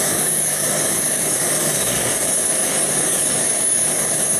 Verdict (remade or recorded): remade